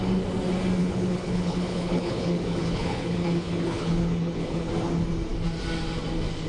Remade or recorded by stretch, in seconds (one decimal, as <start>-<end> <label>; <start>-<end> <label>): 0.0-0.8 recorded; 0.8-4.7 remade; 4.7-6.5 recorded